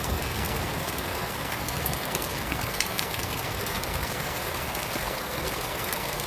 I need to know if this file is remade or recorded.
remade